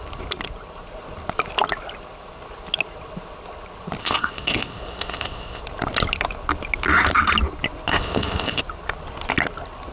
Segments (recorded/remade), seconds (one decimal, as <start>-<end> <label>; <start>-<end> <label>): 0.0-4.0 recorded; 4.0-5.6 remade; 5.6-7.9 recorded; 7.9-8.6 remade; 8.6-9.9 recorded